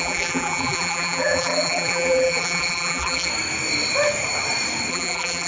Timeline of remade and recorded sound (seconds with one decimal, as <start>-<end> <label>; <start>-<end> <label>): 0.0-3.3 remade; 3.3-4.9 recorded; 4.9-5.5 remade